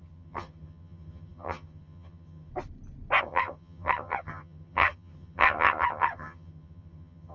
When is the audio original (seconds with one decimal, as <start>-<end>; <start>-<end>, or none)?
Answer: 2.5-3.2